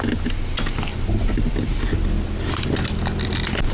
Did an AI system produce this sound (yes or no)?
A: no